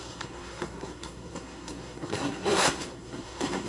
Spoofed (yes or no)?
yes